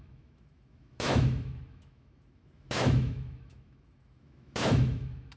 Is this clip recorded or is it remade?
remade